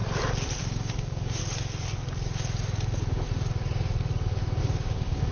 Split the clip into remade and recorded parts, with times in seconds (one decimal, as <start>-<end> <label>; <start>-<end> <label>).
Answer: 0.0-0.6 recorded; 0.6-1.4 remade; 1.4-4.6 recorded; 4.6-5.3 remade